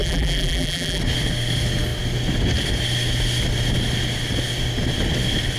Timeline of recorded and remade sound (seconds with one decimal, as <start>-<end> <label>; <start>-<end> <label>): 0.0-1.0 remade; 1.0-5.6 recorded